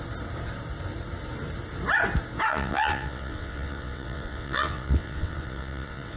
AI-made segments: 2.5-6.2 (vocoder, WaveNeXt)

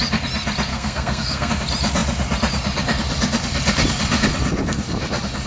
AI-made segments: 0.7-1.5 (codec, SNAC)

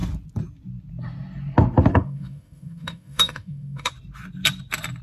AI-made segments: 1.9-3.9 (autoencoder, DAC-VAE)

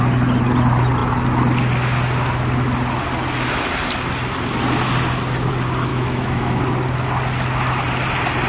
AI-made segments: 5.9-6.6 (autoencoder, DAC-VAE)